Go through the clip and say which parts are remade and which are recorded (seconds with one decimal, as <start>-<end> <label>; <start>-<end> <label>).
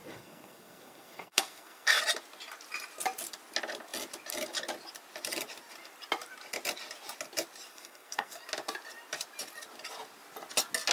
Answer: 0.0-2.0 remade; 2.0-7.7 recorded; 7.7-8.4 remade; 8.4-10.9 recorded